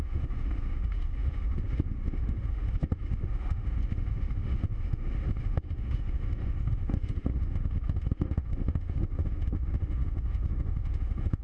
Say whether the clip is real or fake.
fake